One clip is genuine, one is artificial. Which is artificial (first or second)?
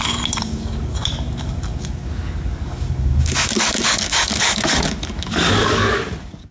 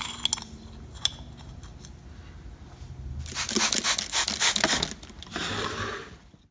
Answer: first